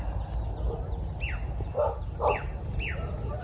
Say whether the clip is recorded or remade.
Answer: recorded